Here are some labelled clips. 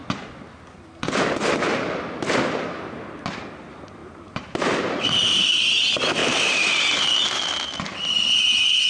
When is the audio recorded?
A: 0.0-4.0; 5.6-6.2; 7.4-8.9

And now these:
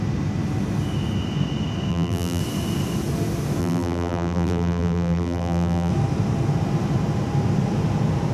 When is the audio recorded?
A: 0.0-1.9; 2.4-3.6; 5.9-8.3